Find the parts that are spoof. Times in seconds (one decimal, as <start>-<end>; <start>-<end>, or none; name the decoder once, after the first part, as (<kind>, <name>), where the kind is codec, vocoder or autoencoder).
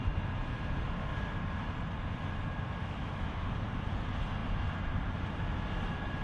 2.8-3.5 (autoencoder, DAC-VAE)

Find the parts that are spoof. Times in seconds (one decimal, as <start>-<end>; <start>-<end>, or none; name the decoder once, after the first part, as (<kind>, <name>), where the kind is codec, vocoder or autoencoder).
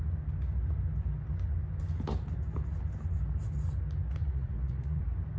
4.2-5.0 (vocoder, Vocos)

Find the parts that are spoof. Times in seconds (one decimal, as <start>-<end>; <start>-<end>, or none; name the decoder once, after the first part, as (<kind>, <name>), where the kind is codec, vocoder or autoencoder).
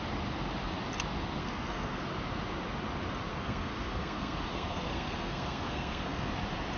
1.4-2.0 (codec, SNAC); 3.3-6.3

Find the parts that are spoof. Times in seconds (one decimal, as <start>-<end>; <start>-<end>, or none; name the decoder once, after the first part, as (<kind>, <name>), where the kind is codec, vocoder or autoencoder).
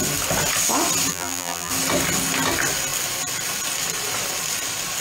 1.1-1.7 (vocoder, BigVGAN v2)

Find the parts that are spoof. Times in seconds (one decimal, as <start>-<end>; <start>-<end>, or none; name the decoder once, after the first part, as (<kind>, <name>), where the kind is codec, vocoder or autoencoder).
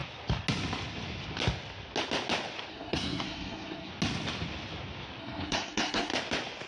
2.7-3.9 (codec, SNAC); 5.2-6.1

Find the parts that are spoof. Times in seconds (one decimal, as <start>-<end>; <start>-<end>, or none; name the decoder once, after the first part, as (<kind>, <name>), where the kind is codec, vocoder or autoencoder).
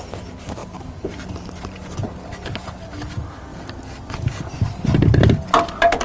0.6-2.3 (vocoder, BigVGAN v2)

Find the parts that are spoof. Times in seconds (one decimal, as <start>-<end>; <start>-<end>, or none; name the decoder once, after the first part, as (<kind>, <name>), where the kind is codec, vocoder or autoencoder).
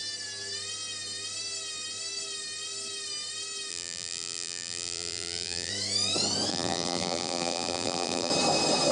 3.7-5.7 (vocoder, BigVGAN v2); 6.5-8.3